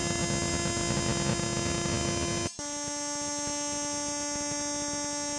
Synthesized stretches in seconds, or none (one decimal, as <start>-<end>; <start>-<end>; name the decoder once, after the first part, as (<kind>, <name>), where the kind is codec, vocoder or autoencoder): none